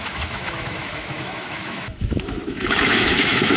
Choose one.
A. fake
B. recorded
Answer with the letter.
A